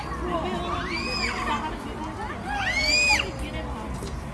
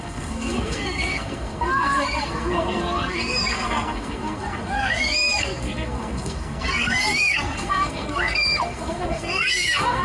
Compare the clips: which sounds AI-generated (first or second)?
second